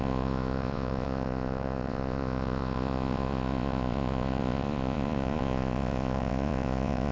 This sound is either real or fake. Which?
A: fake